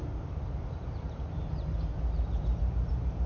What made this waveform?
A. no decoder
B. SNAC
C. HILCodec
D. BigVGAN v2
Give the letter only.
D